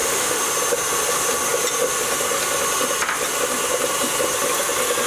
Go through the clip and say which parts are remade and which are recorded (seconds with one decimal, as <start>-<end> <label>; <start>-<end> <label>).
0.0-0.5 remade; 0.5-5.1 recorded